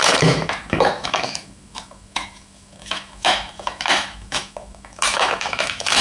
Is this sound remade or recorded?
remade